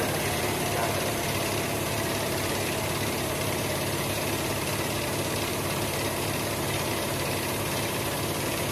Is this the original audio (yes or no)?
no